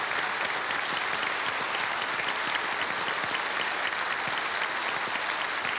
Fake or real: real